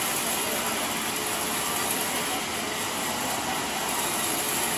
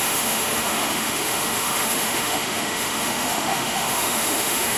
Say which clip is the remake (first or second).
second